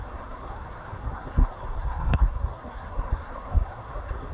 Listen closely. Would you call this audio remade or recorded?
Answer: remade